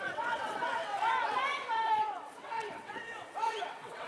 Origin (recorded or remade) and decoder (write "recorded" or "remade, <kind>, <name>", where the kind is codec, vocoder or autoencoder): remade, vocoder, WaveNeXt